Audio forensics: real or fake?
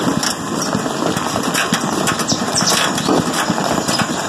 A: real